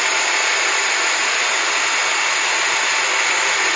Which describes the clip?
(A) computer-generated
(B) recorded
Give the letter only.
B